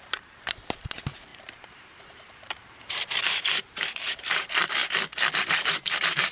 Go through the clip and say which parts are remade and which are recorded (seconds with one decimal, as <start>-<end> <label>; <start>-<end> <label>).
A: 0.0-4.8 remade; 4.8-5.4 recorded; 5.4-6.3 remade